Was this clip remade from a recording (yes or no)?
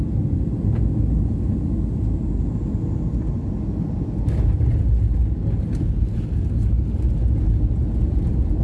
no